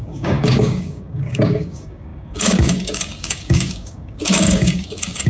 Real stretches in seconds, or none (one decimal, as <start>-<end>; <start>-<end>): none

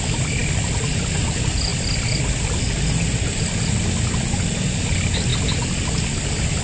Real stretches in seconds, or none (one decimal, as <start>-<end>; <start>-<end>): 0.0-6.6

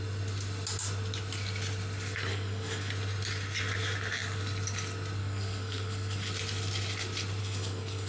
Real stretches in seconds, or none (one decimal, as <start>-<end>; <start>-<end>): 0.0-2.3; 2.9-5.2; 6.3-7.4

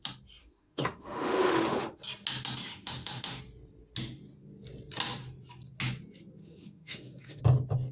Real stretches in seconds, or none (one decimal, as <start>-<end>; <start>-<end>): 0.0-0.4; 2.0-2.6; 3.4-6.4; 7.4-7.9